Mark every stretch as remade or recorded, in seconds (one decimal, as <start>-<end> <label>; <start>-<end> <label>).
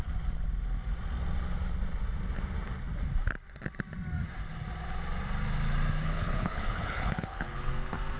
0.0-6.0 recorded; 6.0-7.7 remade; 7.7-8.2 recorded